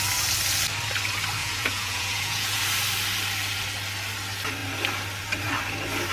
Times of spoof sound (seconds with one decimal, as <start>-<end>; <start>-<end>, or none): 1.4-2.6